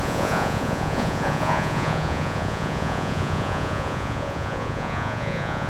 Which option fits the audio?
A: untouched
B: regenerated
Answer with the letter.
B